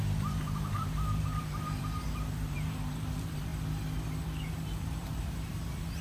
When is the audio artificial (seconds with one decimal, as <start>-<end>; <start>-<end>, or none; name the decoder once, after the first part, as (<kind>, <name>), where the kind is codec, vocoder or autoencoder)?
0.0-3.5 (vocoder, BigVGAN v2); 4.5-6.0